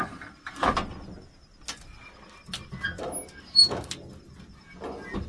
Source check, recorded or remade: recorded